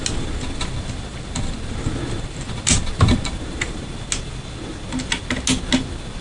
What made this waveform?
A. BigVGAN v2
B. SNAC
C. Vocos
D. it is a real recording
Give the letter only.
D